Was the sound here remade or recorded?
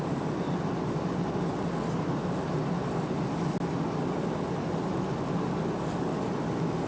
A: recorded